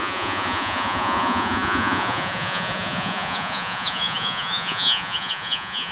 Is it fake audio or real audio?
fake